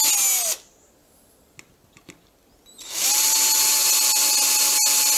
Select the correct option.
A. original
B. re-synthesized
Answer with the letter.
A